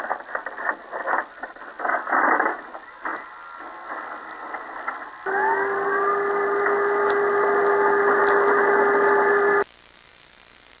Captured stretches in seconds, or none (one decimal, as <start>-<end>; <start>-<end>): 0.0-10.8